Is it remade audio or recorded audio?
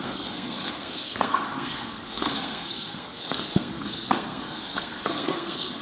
remade